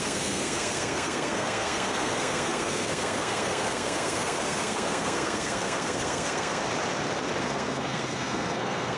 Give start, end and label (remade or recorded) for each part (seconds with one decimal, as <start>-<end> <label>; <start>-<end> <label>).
0.0-6.6 remade; 6.6-7.4 recorded; 7.4-9.0 remade